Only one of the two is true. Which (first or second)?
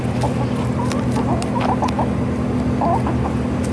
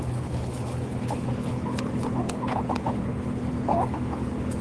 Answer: first